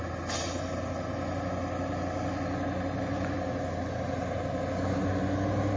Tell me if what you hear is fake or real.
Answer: real